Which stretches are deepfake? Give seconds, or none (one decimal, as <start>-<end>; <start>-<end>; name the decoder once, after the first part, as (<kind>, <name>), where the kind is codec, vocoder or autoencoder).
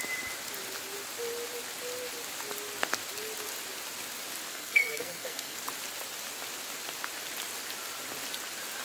4.5-5.6 (codec, SNAC)